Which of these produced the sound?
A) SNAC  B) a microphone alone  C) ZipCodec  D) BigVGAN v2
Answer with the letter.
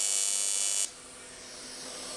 B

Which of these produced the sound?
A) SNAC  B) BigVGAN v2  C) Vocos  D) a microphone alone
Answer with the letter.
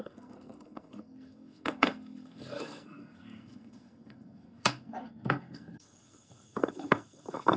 A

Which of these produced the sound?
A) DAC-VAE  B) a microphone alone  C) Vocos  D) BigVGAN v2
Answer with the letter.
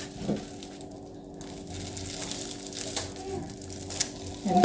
B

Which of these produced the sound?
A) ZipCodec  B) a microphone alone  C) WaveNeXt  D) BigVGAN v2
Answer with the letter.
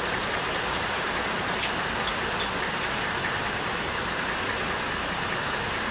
B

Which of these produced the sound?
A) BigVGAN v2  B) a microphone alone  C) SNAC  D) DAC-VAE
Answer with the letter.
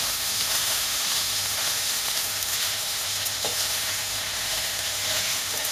D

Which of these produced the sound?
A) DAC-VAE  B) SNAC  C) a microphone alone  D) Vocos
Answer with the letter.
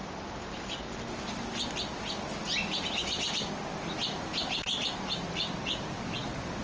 C